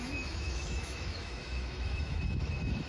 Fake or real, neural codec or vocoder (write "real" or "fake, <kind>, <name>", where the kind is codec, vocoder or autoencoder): fake, autoencoder, DAC-VAE